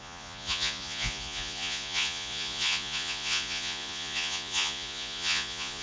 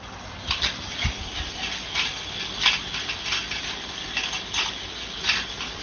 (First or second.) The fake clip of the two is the first